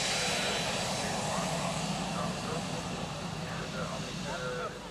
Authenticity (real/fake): real